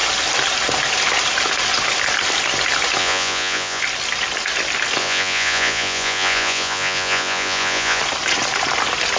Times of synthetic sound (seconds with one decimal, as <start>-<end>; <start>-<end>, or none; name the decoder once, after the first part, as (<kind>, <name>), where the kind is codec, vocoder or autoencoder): 3.0-3.8 (vocoder, Vocos); 5.0-8.0